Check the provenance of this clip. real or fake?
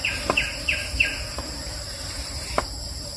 fake